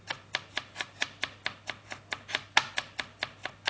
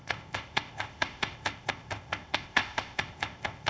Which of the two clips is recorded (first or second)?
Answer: first